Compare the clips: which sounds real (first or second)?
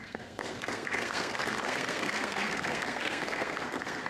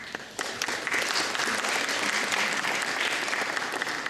second